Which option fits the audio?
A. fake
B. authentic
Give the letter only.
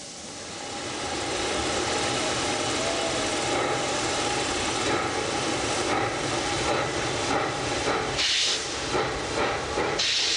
B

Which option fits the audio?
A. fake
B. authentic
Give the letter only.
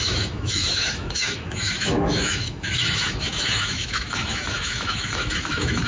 A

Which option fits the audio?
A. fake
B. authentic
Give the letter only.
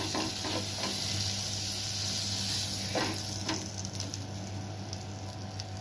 B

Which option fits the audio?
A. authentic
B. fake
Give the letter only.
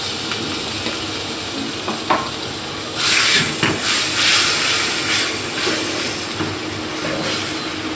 A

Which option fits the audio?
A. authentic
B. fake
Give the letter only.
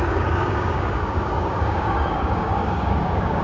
B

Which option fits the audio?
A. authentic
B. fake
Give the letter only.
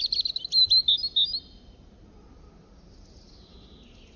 A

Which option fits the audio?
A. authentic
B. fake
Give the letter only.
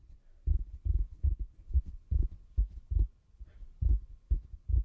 A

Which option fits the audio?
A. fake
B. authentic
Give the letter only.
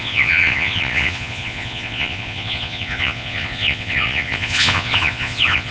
A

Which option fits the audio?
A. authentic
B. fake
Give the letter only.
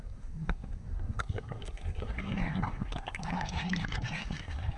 B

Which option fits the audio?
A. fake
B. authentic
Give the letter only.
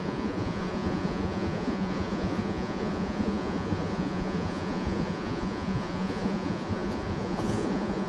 A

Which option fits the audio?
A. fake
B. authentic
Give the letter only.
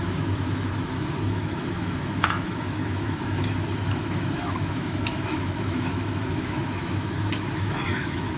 A